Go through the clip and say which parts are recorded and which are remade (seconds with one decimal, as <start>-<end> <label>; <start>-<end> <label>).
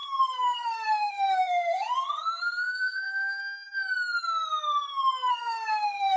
0.0-3.4 remade; 3.4-5.3 recorded; 5.3-6.2 remade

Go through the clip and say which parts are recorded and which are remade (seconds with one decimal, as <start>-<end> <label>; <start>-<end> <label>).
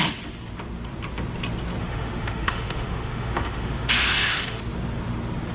0.0-1.8 recorded; 1.8-4.6 remade; 4.6-5.5 recorded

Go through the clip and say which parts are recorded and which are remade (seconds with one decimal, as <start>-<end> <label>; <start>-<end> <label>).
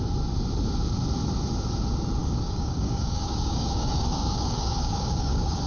0.0-2.2 recorded; 2.2-5.7 remade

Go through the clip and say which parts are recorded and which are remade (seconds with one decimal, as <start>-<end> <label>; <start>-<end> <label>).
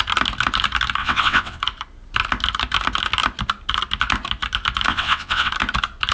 0.0-1.0 recorded; 1.0-1.6 remade; 1.6-4.9 recorded; 4.9-5.5 remade; 5.5-6.1 recorded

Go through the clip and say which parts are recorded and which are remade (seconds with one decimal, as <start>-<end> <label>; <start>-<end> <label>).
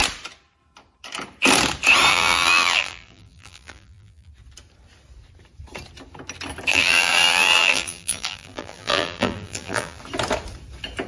0.0-2.1 recorded; 2.1-4.3 remade; 4.3-6.7 recorded; 6.7-10.0 remade; 10.0-11.1 recorded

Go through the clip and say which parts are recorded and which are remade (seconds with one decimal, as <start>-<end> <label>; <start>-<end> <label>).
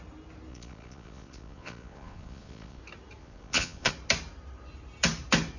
0.0-0.5 recorded; 0.5-2.8 remade; 2.8-3.2 recorded; 3.2-3.9 remade; 3.9-5.6 recorded